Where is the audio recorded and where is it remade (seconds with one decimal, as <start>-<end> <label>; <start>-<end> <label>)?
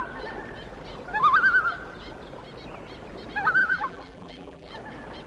0.0-3.6 recorded; 3.6-4.7 remade; 4.7-5.3 recorded